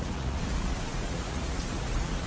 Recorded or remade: remade